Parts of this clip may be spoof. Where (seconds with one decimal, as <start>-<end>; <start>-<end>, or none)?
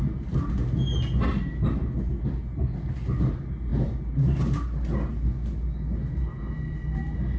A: none